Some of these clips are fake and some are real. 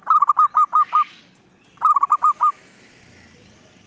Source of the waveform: real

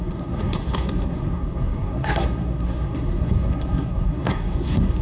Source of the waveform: fake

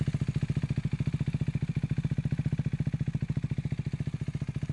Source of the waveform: real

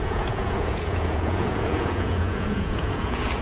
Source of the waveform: fake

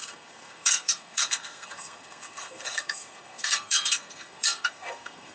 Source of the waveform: fake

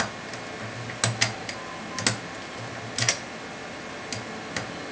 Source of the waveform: real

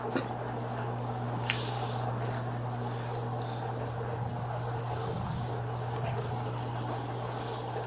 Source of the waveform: real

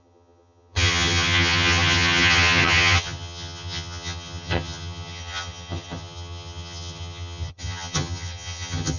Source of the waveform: fake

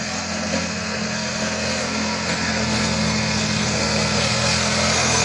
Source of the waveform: fake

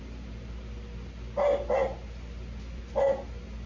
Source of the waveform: real